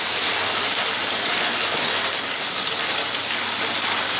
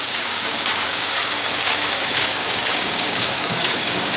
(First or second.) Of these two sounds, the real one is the first